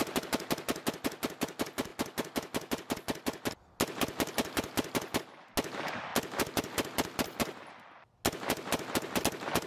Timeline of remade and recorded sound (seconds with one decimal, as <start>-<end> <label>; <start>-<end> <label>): 0.0-9.7 recorded